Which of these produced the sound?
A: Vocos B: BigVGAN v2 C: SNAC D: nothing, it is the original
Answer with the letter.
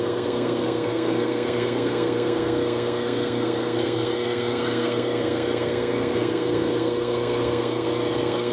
C